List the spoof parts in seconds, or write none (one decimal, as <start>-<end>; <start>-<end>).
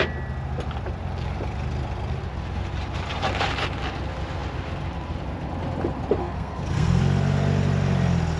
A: 6.2-7.0